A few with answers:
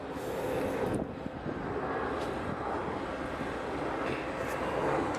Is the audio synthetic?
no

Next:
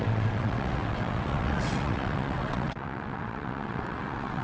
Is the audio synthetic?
yes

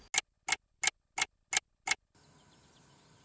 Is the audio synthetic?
no